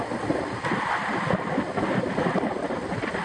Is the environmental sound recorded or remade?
remade